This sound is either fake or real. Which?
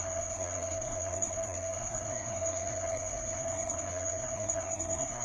fake